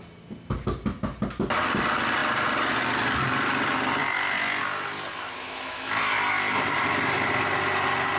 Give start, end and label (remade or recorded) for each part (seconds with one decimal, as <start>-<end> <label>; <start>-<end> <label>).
0.0-5.4 recorded; 5.4-5.9 remade; 5.9-8.2 recorded